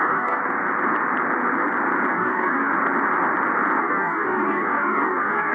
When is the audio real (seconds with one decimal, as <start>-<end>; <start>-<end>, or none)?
0.4-2.1; 2.7-3.8